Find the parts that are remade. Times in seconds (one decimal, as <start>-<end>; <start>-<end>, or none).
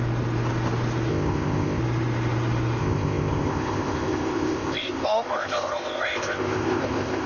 1.1-1.8; 2.8-7.3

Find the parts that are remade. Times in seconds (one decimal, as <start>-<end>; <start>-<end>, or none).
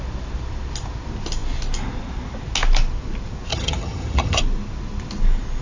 3.5-4.4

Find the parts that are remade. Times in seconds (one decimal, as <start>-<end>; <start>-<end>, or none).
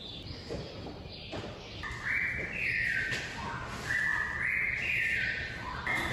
none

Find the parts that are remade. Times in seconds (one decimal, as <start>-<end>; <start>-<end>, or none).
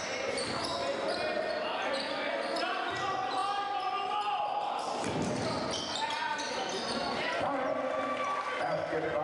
none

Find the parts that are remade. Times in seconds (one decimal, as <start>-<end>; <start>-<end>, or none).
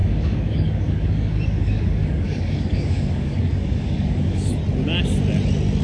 0.0-4.6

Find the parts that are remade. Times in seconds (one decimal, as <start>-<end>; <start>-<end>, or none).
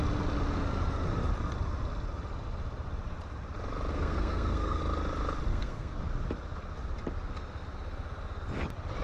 3.9-4.8; 5.5-6.0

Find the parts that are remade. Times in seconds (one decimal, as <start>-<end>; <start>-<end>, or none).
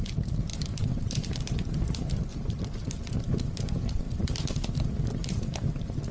0.5-1.8; 2.3-4.6; 5.2-6.1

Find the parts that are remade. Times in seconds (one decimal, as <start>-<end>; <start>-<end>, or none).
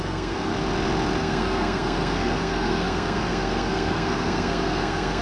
0.0-0.5; 1.2-5.2